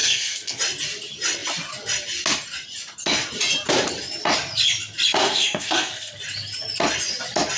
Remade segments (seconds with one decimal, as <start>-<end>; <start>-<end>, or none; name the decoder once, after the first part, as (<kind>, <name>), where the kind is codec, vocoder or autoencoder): 0.0-0.6 (codec, SNAC); 5.2-6.2